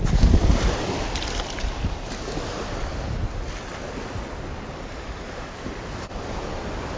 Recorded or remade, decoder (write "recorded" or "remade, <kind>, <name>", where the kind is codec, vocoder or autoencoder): recorded